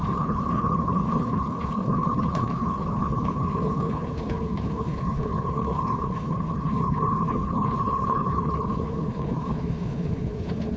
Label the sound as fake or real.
fake